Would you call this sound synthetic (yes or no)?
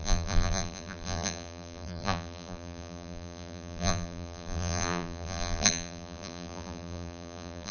yes